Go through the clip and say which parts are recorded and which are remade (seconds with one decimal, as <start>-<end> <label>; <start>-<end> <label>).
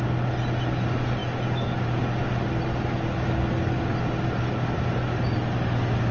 0.0-6.1 recorded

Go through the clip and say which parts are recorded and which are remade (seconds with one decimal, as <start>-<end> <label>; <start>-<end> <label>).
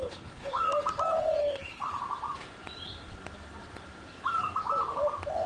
0.0-0.6 remade; 0.6-1.4 recorded; 1.4-1.9 remade; 1.9-5.5 recorded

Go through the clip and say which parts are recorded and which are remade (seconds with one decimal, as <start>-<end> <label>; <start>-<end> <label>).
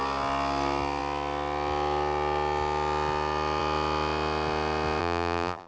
0.0-5.0 recorded; 5.0-5.7 remade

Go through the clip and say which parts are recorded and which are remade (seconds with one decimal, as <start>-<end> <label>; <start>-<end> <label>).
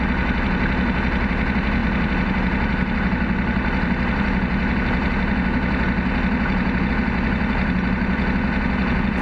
0.0-9.2 recorded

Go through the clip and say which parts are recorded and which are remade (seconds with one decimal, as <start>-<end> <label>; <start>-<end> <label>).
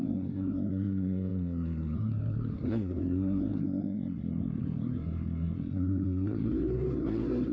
0.0-7.5 remade